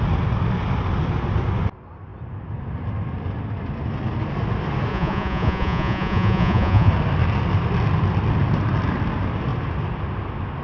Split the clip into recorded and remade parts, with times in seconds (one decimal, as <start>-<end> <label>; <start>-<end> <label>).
0.0-4.9 recorded; 4.9-6.9 remade; 6.9-10.6 recorded